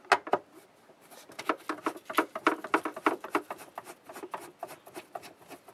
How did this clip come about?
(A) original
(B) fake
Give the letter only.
A